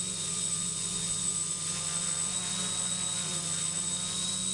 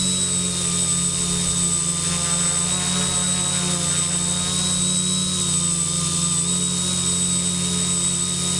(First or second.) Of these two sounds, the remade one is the first